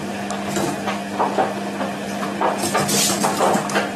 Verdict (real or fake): real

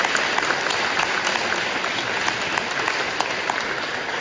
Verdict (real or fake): real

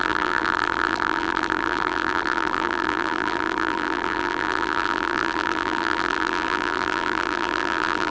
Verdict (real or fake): fake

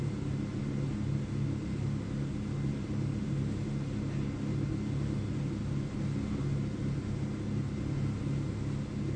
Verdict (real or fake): real